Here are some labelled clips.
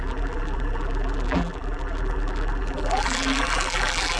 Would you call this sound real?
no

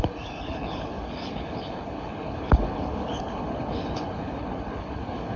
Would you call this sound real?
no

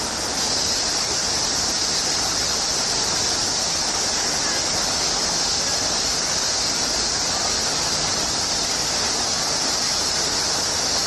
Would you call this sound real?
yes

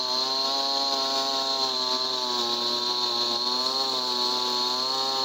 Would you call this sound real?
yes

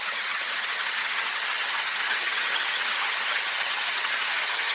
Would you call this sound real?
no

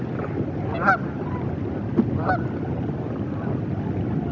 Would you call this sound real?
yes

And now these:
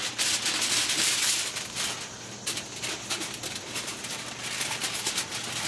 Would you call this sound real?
yes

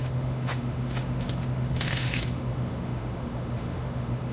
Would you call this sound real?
no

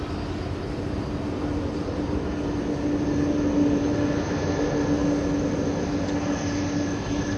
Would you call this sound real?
yes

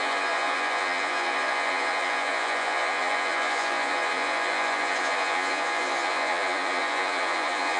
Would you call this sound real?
no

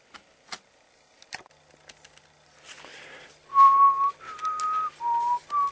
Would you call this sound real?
yes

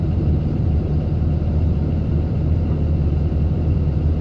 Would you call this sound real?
no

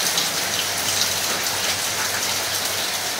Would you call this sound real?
yes